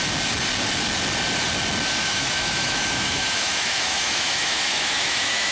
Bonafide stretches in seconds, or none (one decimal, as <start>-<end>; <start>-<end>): 0.0-2.0